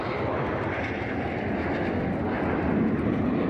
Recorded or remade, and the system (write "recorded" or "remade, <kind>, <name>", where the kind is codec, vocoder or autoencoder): recorded